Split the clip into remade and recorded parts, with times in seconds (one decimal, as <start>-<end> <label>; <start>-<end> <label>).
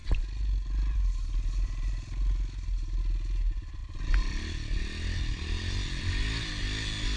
0.0-7.2 recorded